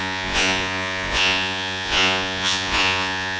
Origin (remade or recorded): remade